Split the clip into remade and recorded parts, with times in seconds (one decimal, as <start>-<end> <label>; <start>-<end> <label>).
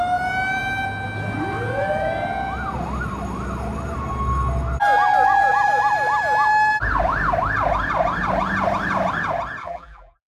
0.0-9.6 recorded; 9.6-10.3 remade